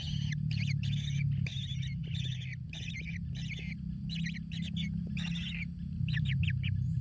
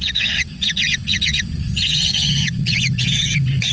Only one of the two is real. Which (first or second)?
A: first